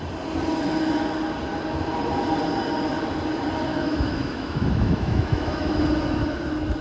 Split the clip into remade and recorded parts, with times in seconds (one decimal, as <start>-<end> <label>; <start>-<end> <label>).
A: 0.0-3.7 recorded; 3.7-5.8 remade; 5.8-6.8 recorded